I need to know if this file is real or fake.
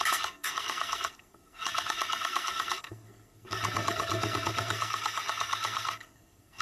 fake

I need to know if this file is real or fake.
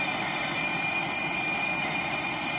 real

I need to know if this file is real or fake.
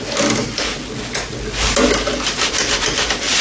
real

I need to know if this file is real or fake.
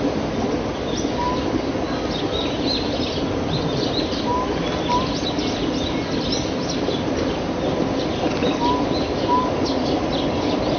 real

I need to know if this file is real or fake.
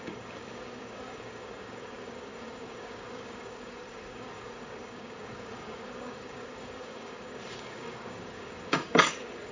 fake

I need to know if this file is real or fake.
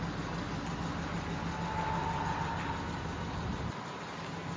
real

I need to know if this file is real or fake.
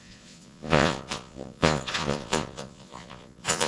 fake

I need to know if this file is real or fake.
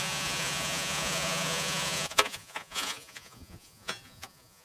fake